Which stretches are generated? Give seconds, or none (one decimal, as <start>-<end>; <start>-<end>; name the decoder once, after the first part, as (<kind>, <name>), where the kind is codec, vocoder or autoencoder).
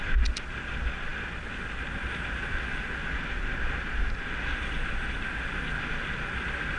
none